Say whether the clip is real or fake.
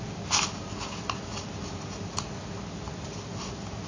real